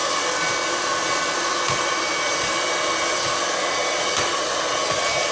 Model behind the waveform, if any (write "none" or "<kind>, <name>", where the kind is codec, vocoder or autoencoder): none